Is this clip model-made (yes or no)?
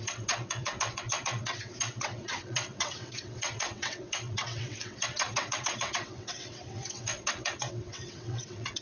yes